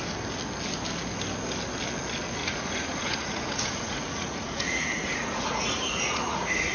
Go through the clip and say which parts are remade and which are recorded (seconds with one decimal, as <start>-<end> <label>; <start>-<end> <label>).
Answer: 0.0-2.4 recorded; 2.4-6.7 remade